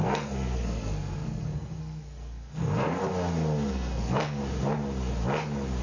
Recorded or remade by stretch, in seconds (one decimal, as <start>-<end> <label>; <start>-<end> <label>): 0.0-3.0 remade; 3.0-3.7 recorded; 3.7-4.4 remade; 4.4-5.8 recorded